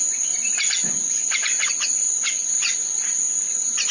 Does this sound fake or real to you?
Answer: real